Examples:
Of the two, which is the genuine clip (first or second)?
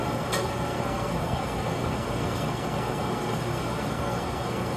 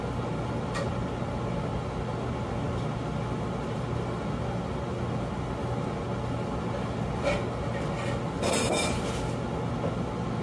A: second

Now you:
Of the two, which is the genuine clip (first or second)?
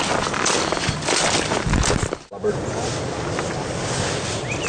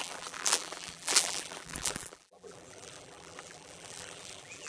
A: first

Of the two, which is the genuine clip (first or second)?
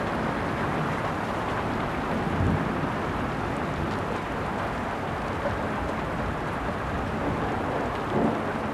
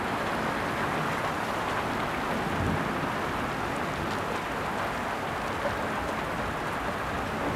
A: second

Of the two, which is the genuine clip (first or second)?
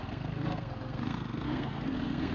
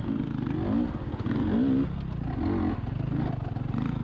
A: second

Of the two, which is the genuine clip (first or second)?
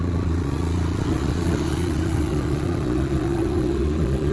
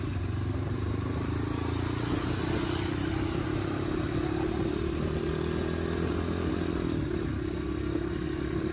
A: second